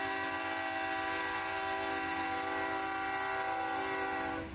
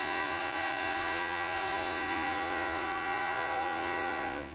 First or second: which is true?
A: first